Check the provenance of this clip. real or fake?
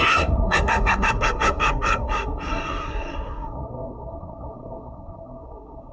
fake